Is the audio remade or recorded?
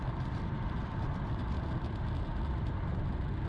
remade